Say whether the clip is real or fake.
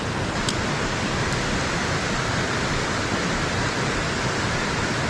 real